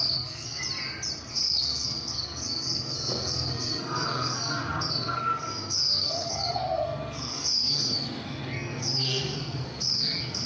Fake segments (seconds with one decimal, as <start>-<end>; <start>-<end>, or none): 0.0-0.6; 1.3-10.5

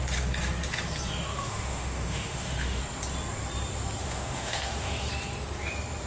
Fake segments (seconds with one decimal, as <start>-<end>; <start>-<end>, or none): 1.3-2.8; 4.0-5.1

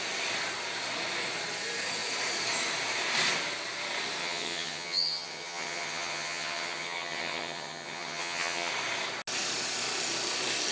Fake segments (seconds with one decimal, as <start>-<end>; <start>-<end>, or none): 4.2-8.7

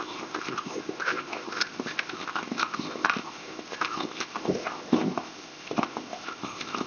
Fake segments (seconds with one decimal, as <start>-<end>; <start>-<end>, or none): 0.0-6.9